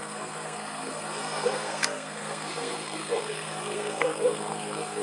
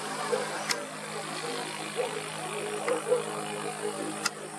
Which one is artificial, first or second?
first